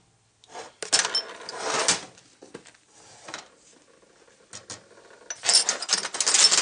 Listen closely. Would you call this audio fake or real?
real